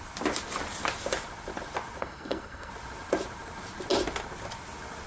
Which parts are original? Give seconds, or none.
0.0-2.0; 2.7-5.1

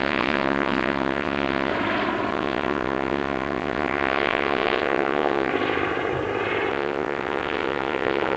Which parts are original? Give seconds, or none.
1.7-2.3; 5.5-6.7

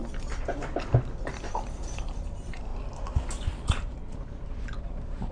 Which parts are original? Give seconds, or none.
0.0-1.2; 2.7-4.4